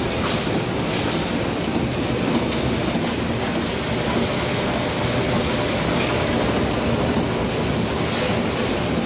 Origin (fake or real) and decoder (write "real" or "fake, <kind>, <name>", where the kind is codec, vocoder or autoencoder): real